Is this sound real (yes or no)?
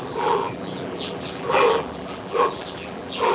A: no